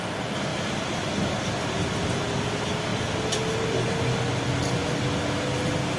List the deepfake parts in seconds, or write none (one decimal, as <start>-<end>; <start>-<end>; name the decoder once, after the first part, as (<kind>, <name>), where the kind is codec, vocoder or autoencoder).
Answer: 0.5-1.7 (vocoder, BigVGAN v2); 2.9-3.6